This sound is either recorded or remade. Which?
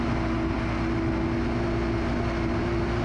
recorded